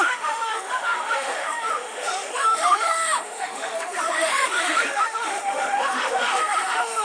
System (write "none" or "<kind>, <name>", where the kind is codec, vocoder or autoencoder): autoencoder, DAC-VAE